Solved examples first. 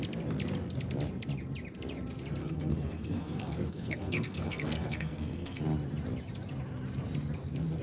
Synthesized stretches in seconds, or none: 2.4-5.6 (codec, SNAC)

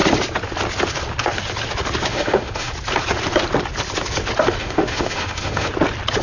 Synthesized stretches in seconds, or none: 2.1-2.7 (autoencoder, DAC-VAE); 4.6-5.7

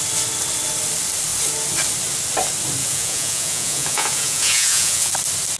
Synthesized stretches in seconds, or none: 2.8-5.1 (vocoder, Vocos)

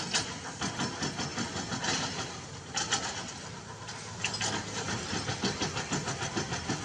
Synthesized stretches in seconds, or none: none

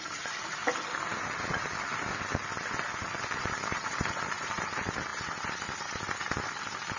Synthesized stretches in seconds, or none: 0.0-0.6 (vocoder, BigVGAN v2); 3.4-7.0

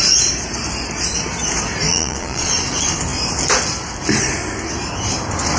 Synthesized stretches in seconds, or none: 1.9-2.5 (vocoder, Vocos)

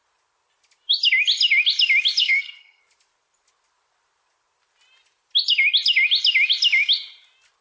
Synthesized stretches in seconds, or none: 2.2-2.8 (codec, SNAC)

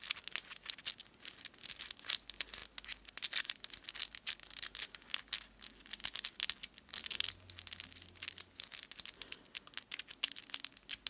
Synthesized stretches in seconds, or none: none